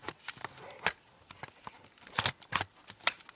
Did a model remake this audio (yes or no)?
no